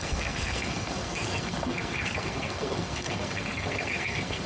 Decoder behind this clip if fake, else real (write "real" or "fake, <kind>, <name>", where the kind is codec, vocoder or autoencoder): fake, codec, SNAC